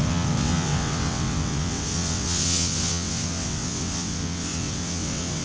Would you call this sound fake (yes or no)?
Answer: yes